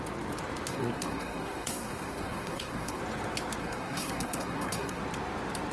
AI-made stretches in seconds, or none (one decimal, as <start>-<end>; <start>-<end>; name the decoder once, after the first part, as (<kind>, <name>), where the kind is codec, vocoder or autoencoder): 0.7-3.0 (codec, SNAC); 3.6-5.0